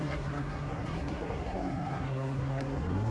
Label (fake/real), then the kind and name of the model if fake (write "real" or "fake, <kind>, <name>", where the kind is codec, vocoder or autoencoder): fake, codec, SNAC